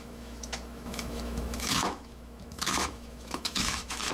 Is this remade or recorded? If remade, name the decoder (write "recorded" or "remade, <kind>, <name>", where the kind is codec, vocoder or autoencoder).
remade, autoencoder, DAC-VAE